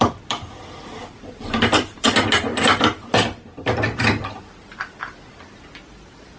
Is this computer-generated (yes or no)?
no